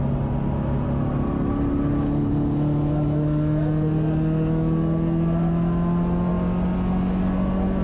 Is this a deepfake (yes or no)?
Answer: no